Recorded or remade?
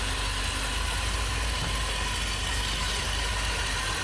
recorded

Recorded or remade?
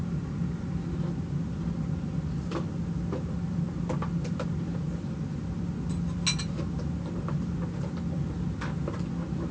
recorded